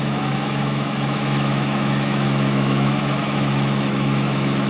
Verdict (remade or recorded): remade